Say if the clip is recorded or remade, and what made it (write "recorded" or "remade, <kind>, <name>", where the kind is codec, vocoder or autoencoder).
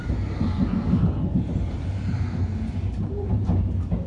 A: recorded